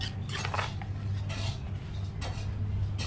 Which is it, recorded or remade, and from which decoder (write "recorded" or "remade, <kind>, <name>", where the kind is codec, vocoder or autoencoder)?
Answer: recorded